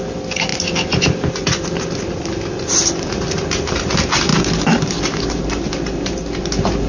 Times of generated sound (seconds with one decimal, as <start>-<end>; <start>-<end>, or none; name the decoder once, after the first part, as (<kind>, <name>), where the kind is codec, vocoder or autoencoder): none

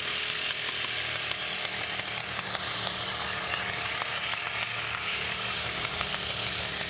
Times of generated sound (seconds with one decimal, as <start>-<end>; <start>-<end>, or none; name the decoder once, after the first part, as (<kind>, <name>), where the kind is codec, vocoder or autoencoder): 2.2-6.1 (codec, DAC)

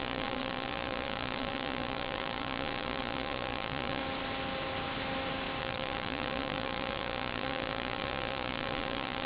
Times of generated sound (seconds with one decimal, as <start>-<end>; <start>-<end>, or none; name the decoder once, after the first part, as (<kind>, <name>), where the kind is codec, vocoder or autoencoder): 0.0-4.0 (vocoder, Vocos); 5.6-9.3

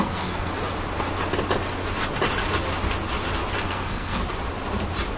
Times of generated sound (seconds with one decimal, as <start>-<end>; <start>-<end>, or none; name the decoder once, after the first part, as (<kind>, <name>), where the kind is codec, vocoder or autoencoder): 0.0-0.5 (codec, SNAC); 3.6-4.2

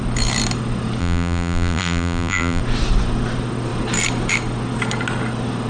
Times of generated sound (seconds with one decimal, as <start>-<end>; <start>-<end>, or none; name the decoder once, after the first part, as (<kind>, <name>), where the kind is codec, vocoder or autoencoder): 1.0-2.6 (vocoder, BigVGAN v2)

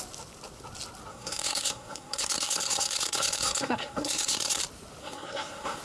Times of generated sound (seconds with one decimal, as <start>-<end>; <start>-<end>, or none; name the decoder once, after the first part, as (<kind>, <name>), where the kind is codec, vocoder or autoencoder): 1.1-4.6 (codec, SNAC); 5.0-5.8